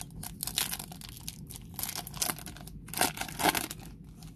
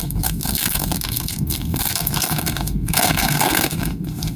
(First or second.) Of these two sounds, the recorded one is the first